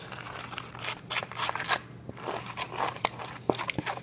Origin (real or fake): real